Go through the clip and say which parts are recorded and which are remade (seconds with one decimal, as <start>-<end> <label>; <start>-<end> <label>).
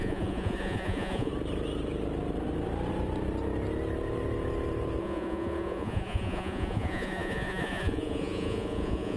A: 0.0-1.3 remade; 1.3-5.0 recorded; 5.0-9.2 remade